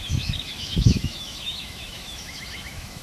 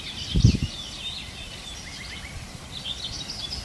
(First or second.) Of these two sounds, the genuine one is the second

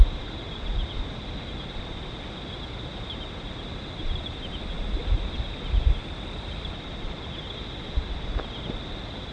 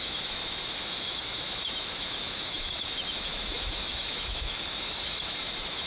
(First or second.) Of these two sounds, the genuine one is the first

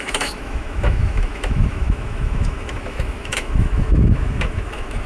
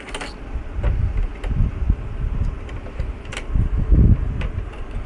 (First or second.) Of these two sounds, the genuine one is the second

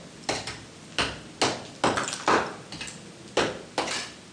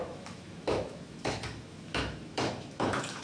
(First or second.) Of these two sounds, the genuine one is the first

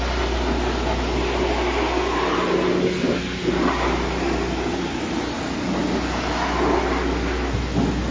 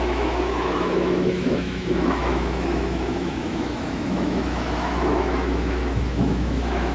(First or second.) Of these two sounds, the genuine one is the first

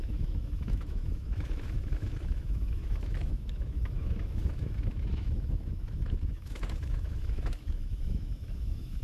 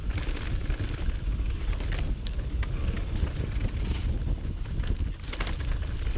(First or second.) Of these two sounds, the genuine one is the second